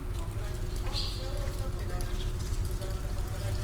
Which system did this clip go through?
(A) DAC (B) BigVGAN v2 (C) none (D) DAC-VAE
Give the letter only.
C